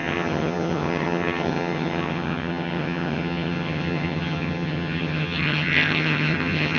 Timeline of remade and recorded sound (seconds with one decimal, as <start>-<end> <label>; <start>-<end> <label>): 0.0-6.8 remade